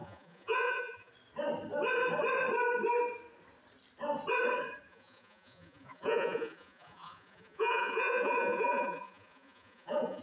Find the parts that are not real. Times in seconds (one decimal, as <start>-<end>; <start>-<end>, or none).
0.0-1.1; 4.9-10.2